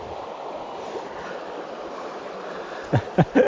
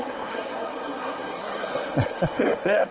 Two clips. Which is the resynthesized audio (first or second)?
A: second